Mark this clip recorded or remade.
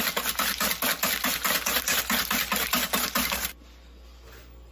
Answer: recorded